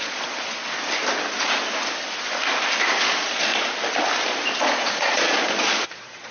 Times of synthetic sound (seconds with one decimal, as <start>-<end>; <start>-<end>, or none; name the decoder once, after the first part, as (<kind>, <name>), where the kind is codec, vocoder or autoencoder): 0.0-0.6 (vocoder, Vocos); 3.0-3.5; 4.6-6.3